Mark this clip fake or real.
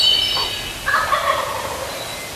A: real